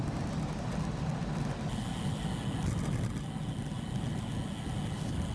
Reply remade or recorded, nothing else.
recorded